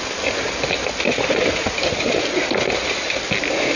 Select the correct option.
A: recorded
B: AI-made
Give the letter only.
A